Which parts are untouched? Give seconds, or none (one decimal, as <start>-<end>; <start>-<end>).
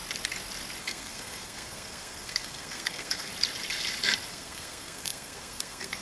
0.0-0.8; 3.3-4.3